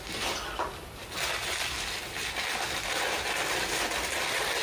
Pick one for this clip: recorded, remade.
recorded